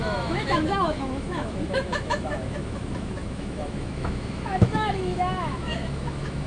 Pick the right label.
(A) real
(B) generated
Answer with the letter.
B